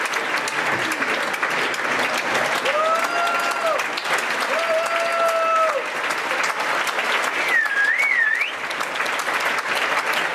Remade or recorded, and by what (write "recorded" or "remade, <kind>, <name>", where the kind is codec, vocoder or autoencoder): recorded